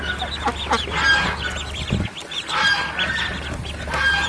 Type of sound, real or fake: real